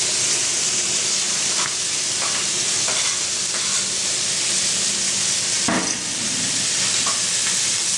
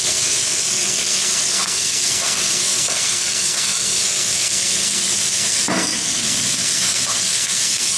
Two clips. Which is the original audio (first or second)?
first